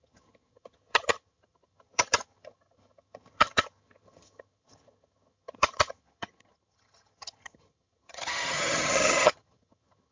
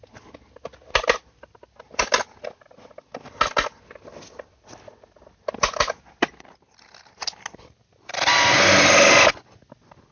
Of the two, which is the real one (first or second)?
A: second